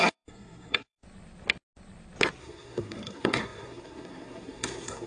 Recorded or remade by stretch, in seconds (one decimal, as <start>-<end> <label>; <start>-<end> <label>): 0.0-1.0 remade; 1.0-2.4 recorded; 2.4-5.1 remade